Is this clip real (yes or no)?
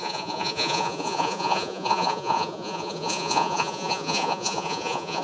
no